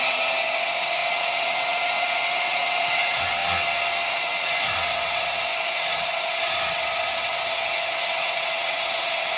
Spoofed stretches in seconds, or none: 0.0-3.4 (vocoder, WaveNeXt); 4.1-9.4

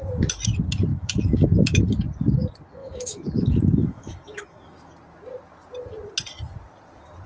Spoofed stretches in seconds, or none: 0.9-1.8 (autoencoder, DAC-VAE); 2.8-4.9

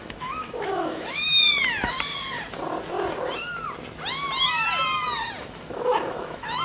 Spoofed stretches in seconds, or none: 0.0-1.4 (autoencoder, DAC-VAE); 5.4-6.6

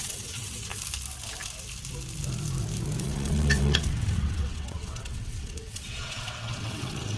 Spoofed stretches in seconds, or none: 0.0-0.7 (vocoder, WaveNeXt); 3.0-7.2

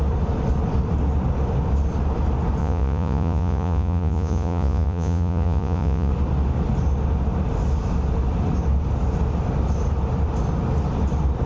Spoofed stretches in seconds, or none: 2.6-6.1 (vocoder, Vocos)